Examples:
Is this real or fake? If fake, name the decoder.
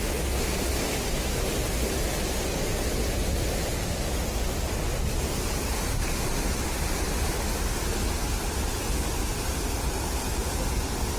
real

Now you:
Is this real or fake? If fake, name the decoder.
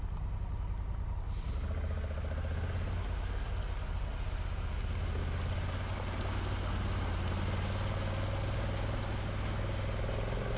real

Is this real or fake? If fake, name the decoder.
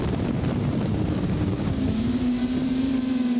fake, vocoder, BigVGAN v2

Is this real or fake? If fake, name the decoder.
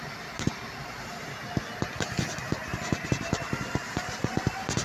real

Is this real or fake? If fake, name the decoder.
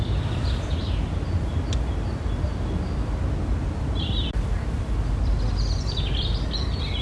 real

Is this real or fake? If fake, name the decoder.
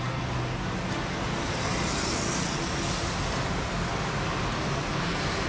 real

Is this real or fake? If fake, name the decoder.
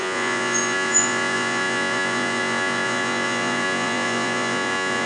fake, vocoder, Vocos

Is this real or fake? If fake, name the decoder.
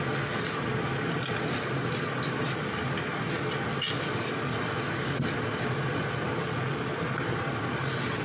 real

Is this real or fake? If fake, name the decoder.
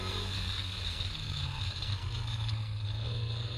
fake, codec, SNAC